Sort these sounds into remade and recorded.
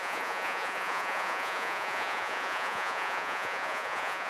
remade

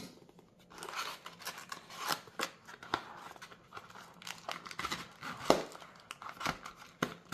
recorded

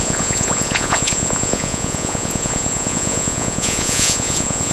remade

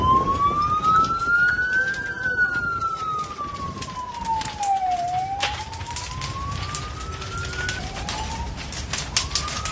recorded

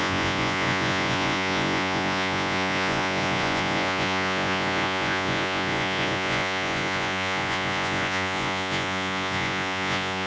remade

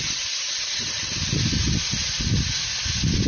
recorded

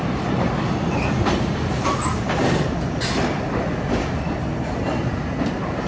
recorded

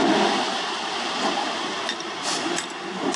recorded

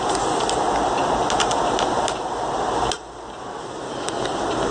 recorded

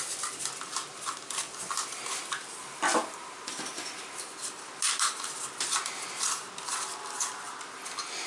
recorded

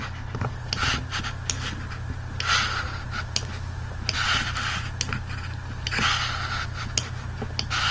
recorded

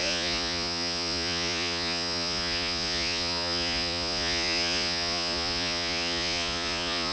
remade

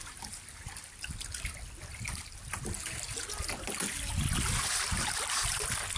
recorded